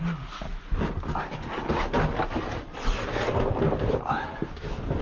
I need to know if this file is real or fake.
real